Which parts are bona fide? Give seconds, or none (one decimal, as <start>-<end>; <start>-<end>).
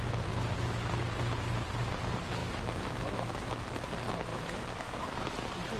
0.0-2.4; 3.7-4.3; 5.3-5.8